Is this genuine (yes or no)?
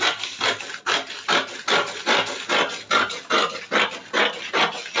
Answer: yes